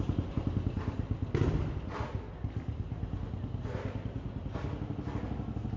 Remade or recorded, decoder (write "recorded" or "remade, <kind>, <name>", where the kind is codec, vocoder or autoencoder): recorded